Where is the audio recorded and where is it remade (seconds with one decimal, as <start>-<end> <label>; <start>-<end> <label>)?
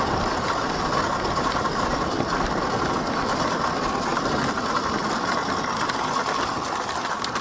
0.0-7.4 recorded